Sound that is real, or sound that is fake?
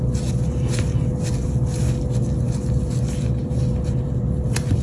real